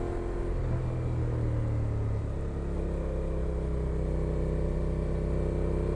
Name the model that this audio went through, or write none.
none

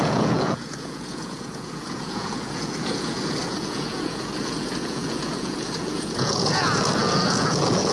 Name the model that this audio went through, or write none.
vocoder, Vocos